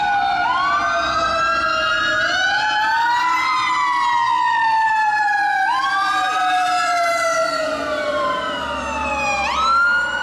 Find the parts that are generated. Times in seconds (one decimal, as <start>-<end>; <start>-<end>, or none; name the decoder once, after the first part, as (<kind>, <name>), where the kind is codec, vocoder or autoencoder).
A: 4.5-9.1 (vocoder, BigVGAN v2)